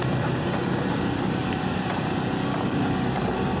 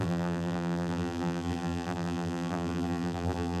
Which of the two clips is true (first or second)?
first